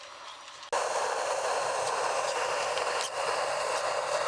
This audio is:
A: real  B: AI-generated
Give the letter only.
A